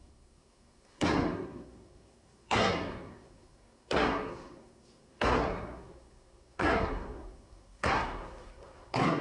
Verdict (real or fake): fake